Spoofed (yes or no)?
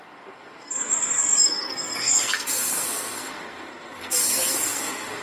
yes